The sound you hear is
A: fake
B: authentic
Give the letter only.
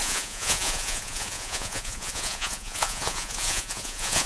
A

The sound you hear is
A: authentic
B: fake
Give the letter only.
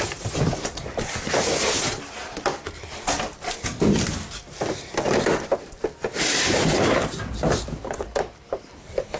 B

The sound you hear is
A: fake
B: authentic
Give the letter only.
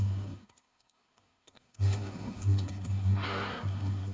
A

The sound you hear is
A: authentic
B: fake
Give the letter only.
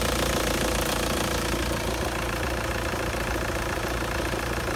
B